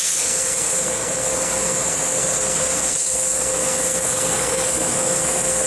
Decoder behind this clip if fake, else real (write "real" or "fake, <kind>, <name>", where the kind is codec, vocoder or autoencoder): fake, codec, SNAC